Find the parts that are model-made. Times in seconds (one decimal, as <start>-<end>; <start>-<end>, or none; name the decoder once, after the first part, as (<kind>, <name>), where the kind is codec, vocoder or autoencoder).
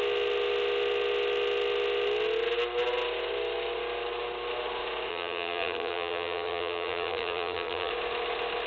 5.1-7.9 (vocoder, BigVGAN v2)